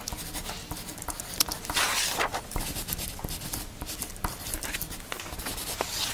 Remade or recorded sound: recorded